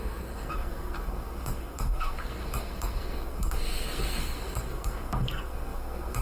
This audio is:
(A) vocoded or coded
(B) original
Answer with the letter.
A